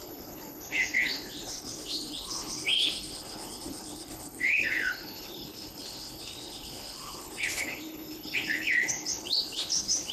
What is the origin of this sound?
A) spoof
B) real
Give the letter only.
A